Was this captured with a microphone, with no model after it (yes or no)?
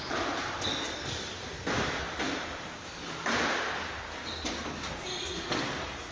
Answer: yes